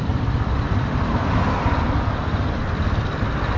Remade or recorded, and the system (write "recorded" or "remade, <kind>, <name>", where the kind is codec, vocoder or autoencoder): recorded